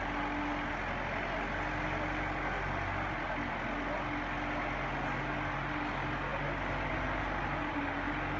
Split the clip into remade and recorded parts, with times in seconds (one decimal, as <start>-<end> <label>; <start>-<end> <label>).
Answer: 0.0-8.4 recorded